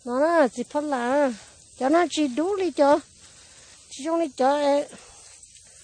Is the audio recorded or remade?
recorded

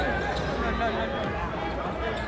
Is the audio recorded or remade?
recorded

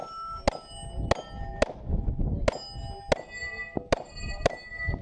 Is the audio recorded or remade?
recorded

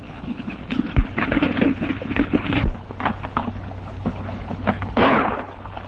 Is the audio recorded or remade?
remade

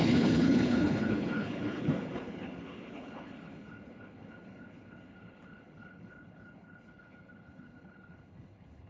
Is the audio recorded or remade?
remade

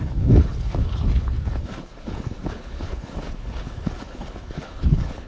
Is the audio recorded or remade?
remade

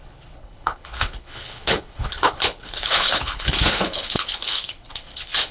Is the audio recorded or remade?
remade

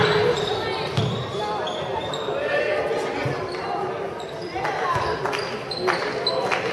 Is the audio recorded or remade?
recorded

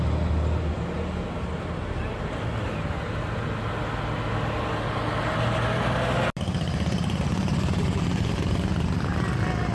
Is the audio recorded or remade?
recorded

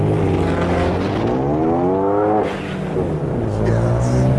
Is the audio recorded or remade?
recorded